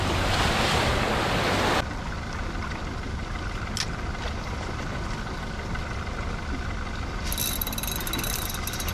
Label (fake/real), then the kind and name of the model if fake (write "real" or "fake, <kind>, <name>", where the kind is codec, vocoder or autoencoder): real